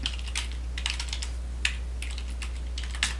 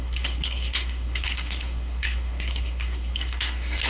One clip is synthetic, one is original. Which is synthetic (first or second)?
second